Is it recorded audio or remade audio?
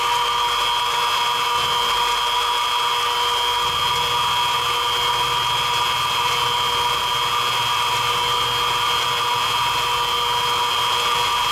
recorded